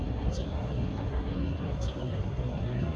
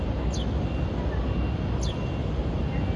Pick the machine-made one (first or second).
first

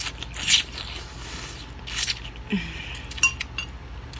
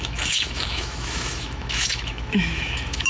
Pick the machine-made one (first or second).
second